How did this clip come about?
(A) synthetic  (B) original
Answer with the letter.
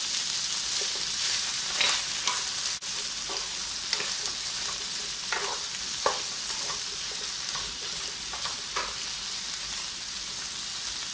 B